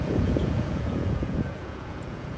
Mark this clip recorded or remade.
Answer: remade